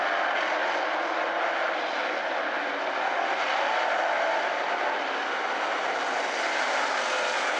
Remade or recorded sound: recorded